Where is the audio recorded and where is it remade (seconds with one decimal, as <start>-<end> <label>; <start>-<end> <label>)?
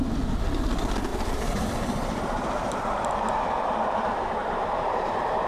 0.0-1.1 recorded; 1.1-3.0 remade; 3.0-4.4 recorded; 4.4-5.1 remade; 5.1-5.5 recorded